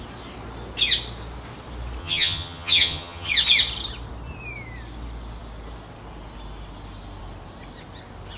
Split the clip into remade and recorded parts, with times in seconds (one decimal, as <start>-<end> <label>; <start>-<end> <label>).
0.0-2.0 recorded; 2.0-3.3 remade; 3.3-8.4 recorded